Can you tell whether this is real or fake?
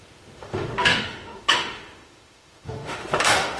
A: fake